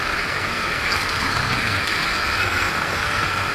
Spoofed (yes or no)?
yes